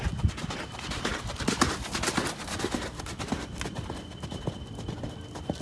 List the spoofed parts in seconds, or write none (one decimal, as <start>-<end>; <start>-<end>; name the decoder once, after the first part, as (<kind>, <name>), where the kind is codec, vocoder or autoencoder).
none